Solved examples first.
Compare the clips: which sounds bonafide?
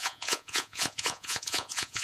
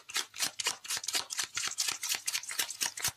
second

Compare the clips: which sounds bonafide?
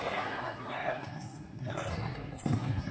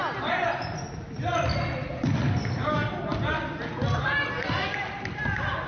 second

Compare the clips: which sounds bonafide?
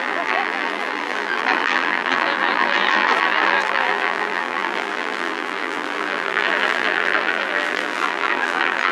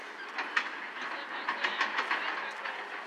second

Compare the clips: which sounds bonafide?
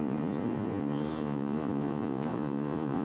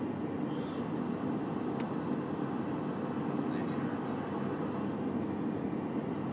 second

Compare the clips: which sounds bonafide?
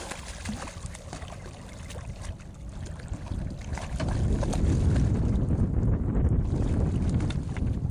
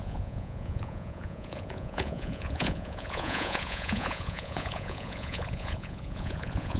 first